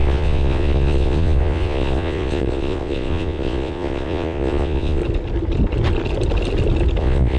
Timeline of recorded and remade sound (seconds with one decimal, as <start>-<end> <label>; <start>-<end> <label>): 0.0-5.0 remade; 5.0-7.0 recorded; 7.0-7.4 remade